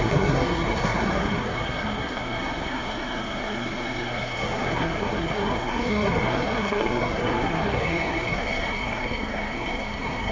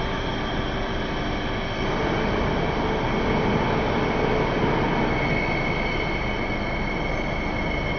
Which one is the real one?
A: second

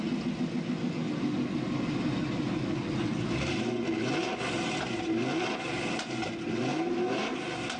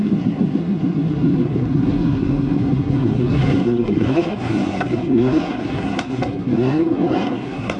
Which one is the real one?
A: first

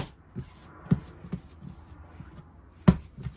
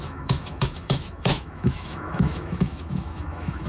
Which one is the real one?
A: first